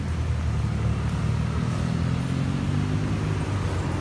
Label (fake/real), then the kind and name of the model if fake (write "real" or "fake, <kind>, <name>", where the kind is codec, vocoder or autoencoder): real